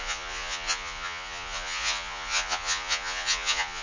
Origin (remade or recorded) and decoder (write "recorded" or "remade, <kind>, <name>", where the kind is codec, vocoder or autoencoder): remade, vocoder, Vocos